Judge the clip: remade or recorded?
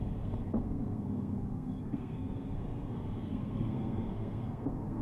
remade